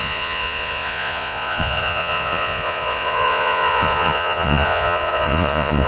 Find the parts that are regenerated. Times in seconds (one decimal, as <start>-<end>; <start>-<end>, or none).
0.0-5.9